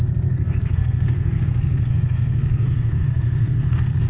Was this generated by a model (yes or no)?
yes